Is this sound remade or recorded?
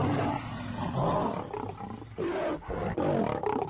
recorded